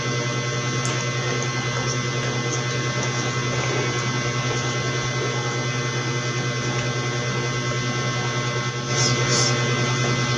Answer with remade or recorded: recorded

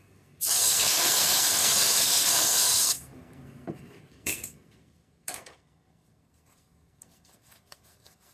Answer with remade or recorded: remade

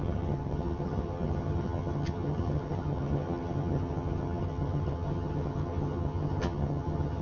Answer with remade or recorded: remade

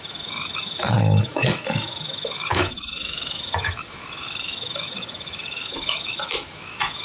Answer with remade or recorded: remade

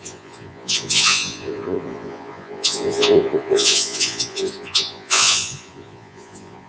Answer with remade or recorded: remade